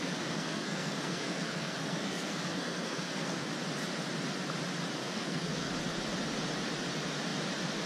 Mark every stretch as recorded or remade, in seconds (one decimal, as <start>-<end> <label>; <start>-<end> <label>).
0.0-3.5 remade; 3.5-5.0 recorded; 5.0-5.7 remade; 5.7-7.9 recorded